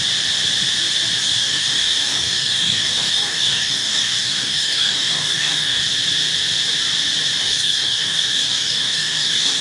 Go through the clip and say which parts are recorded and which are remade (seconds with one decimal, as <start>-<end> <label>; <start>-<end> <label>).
0.0-1.2 recorded; 1.2-5.8 remade; 5.8-7.4 recorded; 7.4-9.6 remade